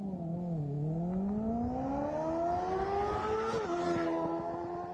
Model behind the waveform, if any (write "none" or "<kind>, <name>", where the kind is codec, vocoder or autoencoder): none